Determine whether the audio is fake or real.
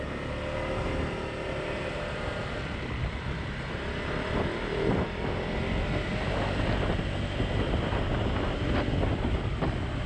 real